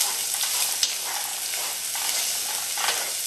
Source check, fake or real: real